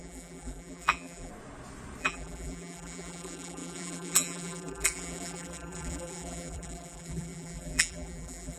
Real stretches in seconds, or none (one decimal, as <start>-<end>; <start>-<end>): 1.3-2.0